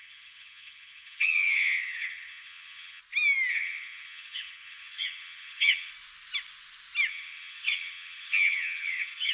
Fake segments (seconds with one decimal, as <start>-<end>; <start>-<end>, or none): 0.0-3.0; 3.5-5.9; 7.1-9.3